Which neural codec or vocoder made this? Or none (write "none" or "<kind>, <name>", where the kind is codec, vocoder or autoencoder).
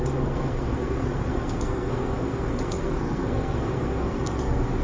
codec, SNAC